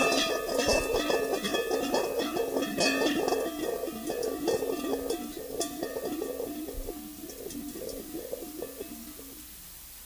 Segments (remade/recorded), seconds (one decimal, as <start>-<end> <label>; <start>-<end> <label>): 0.0-10.1 recorded